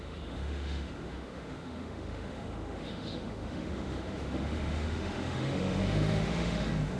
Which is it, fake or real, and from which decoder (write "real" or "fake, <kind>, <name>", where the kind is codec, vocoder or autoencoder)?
fake, autoencoder, DAC-VAE